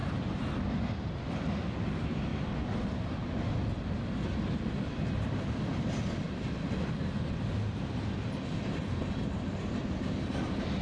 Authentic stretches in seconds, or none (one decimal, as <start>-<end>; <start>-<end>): 0.0-10.8